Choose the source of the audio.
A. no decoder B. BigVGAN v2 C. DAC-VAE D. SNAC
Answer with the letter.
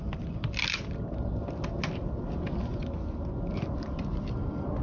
A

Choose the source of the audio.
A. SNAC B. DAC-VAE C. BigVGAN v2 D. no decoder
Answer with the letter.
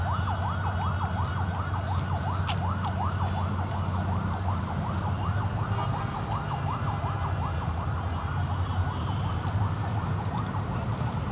D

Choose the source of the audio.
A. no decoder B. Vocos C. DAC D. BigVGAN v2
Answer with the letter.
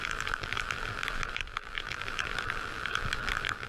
D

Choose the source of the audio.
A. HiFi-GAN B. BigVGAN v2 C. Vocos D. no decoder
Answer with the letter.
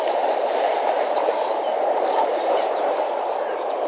B